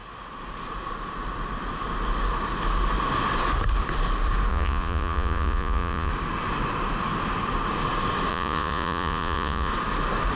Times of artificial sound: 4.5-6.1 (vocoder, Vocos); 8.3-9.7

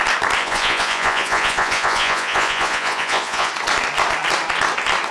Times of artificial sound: 0.4-3.5 (vocoder, Vocos)